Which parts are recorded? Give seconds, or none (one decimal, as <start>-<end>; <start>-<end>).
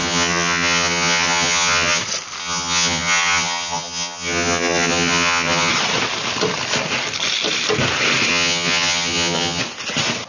2.0-2.4; 5.7-8.3; 9.6-10.3